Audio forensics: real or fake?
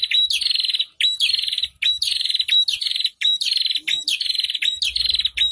real